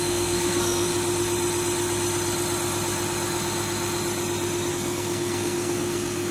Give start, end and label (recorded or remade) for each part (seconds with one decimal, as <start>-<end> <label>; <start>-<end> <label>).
0.0-0.9 remade; 0.9-4.7 recorded; 4.7-6.3 remade